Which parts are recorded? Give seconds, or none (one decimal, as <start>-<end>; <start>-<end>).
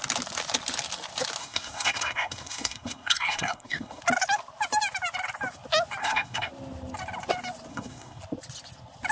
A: 0.0-1.4; 4.0-6.0; 6.5-7.7; 8.2-9.1